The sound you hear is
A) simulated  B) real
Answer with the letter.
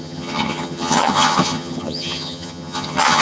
A